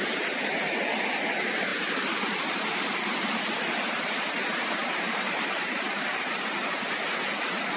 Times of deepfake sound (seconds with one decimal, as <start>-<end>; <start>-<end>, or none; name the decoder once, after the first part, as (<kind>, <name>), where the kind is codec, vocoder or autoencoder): 1.7-3.4 (vocoder, BigVGAN v2); 4.8-6.0